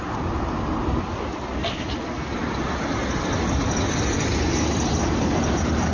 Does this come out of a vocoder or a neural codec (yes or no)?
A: no